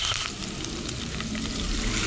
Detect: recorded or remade recorded